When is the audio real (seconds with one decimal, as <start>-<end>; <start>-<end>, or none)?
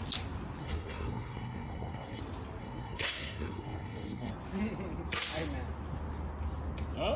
0.0-0.6; 2.2-2.6; 4.3-7.2